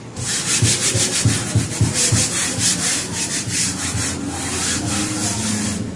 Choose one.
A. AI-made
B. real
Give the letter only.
B